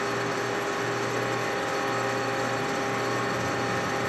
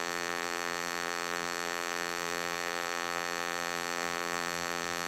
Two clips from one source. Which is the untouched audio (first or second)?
first